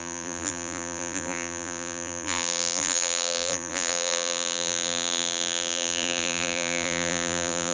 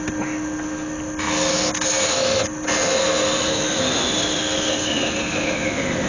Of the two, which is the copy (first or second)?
first